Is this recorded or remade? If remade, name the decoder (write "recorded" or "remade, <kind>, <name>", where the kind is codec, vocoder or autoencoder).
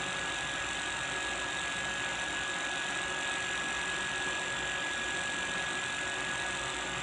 recorded